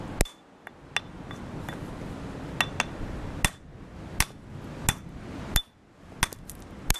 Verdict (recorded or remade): recorded